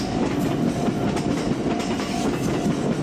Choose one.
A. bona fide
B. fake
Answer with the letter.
A